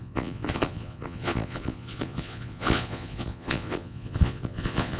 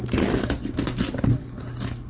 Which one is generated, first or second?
first